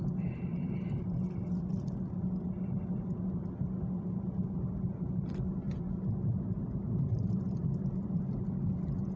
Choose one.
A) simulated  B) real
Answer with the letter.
B